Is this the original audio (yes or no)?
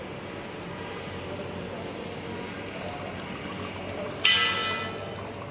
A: yes